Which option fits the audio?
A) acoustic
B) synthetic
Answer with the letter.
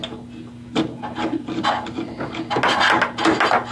A